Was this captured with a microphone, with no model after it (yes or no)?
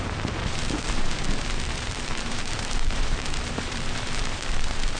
no